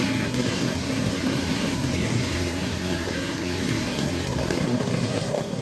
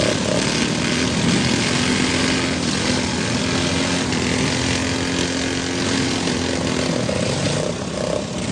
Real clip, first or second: second